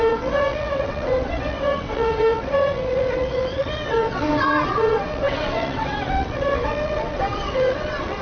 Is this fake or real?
fake